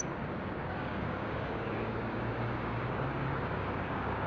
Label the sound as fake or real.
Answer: fake